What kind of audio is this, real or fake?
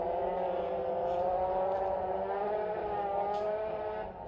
fake